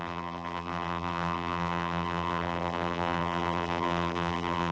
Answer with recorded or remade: remade